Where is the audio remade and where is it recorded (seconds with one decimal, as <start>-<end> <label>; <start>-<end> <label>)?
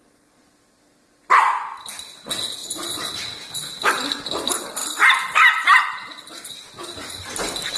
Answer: 0.0-4.8 recorded; 4.8-6.5 remade; 6.5-7.8 recorded